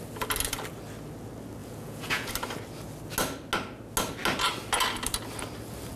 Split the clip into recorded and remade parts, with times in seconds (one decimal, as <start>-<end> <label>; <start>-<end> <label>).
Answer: 0.0-1.6 recorded; 1.6-2.3 remade; 2.3-6.0 recorded